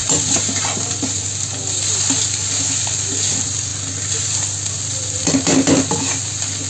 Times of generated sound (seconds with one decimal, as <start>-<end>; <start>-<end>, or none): none